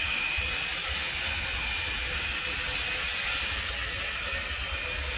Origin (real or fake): real